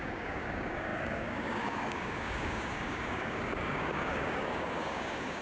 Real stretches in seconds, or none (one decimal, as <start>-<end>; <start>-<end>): none